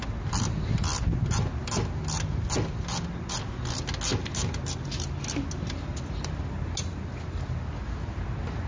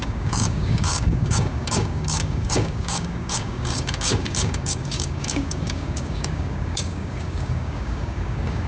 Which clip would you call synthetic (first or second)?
second